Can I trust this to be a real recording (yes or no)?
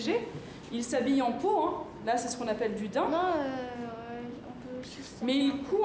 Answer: yes